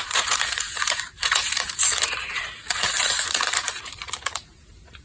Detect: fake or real fake